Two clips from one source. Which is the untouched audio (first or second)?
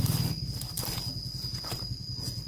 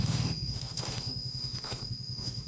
first